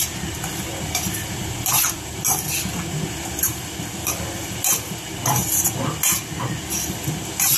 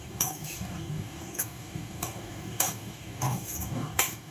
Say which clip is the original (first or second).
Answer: first